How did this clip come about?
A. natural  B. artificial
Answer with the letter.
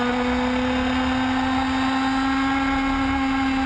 A